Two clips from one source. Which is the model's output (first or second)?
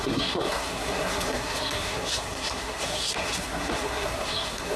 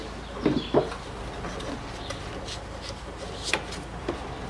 first